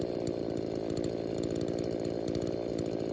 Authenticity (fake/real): real